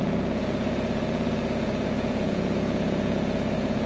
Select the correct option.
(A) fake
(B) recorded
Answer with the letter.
A